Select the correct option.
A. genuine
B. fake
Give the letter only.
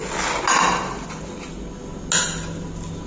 A